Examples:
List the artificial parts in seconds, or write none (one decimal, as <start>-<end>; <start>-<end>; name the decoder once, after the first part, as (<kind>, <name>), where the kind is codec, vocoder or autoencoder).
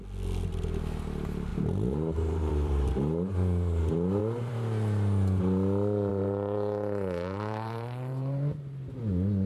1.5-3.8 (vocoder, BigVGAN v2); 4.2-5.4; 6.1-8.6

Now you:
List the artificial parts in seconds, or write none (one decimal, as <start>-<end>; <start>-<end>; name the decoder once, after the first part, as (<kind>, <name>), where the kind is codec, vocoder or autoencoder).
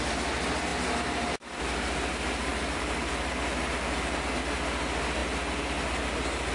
2.5-3.3 (vocoder, BigVGAN v2)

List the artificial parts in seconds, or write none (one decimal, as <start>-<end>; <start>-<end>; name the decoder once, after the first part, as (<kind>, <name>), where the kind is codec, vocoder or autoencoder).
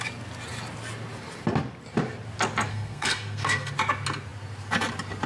2.7-3.7 (codec, SNAC)